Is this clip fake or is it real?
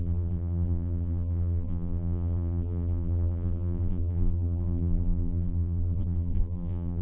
fake